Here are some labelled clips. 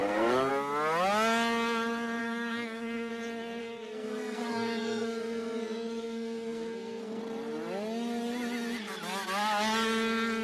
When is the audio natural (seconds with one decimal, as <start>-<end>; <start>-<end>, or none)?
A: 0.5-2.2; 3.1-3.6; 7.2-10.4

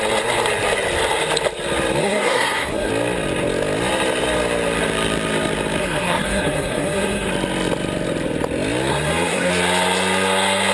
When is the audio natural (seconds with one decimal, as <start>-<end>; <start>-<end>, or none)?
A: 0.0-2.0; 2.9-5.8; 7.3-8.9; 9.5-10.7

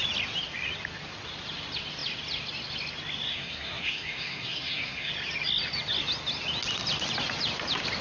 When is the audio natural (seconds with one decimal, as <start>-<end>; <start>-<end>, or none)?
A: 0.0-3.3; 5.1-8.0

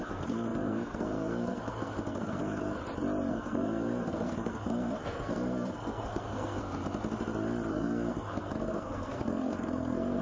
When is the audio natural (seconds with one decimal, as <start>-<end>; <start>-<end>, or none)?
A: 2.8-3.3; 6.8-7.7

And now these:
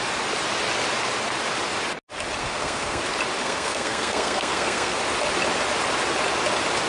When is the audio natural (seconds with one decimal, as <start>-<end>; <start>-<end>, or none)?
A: 0.0-2.4; 3.0-3.4; 5.0-6.9

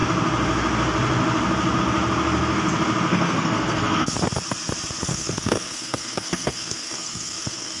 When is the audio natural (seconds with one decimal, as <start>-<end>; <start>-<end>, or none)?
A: 0.0-3.1; 4.1-5.1

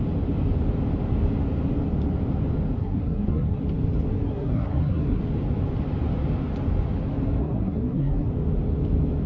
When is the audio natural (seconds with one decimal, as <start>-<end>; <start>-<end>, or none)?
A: 0.0-2.8; 3.6-4.1; 5.2-7.4; 8.3-9.3